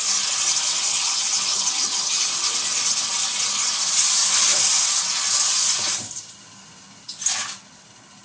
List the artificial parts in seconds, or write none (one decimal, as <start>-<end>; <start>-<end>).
0.9-2.2